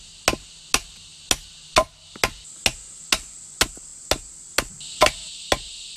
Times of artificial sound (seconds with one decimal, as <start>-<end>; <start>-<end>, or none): none